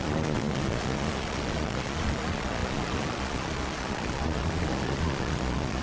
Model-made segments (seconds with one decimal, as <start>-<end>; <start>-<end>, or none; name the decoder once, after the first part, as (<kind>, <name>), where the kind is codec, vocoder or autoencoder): 0.0-5.8 (vocoder, Vocos)